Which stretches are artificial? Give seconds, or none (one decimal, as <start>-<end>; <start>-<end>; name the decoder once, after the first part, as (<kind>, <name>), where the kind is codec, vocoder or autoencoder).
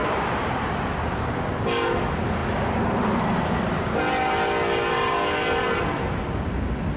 none